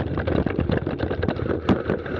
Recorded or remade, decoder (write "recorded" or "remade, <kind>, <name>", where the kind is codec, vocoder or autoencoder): recorded